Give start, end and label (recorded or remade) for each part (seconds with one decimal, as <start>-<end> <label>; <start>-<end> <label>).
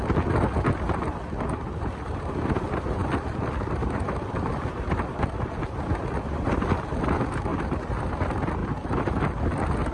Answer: 0.0-3.0 recorded; 3.0-7.0 remade; 7.0-7.5 recorded; 7.5-8.0 remade; 8.0-8.6 recorded; 8.6-9.4 remade; 9.4-9.9 recorded